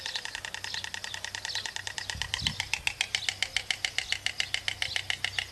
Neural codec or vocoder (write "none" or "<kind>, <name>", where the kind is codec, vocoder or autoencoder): none